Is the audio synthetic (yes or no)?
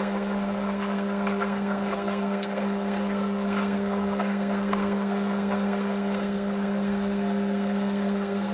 yes